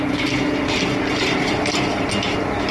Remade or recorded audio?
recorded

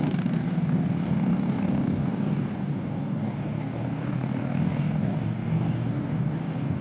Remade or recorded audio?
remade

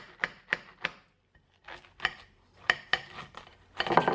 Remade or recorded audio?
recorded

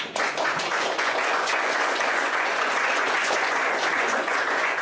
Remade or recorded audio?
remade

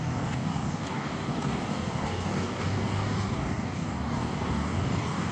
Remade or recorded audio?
remade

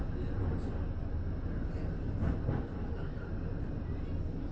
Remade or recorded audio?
recorded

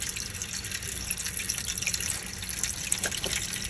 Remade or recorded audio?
recorded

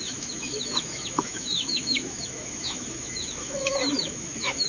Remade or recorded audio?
remade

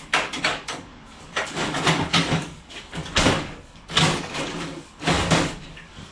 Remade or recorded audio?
remade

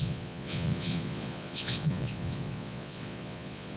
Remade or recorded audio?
remade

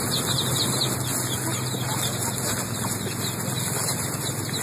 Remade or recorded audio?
recorded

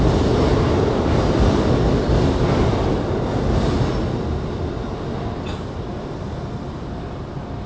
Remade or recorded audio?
recorded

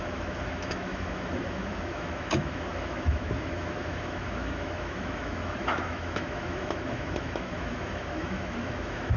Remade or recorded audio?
remade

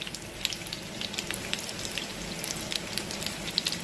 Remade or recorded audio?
recorded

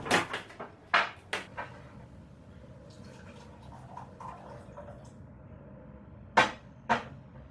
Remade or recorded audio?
recorded